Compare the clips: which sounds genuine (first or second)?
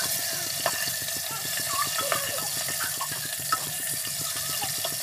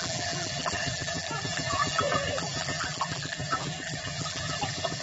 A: first